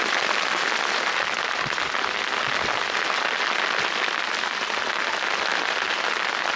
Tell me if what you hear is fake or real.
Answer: real